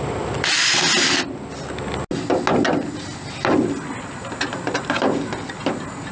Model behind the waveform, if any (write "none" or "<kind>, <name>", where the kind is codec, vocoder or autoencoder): none